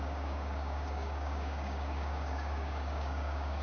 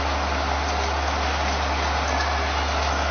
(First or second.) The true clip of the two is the second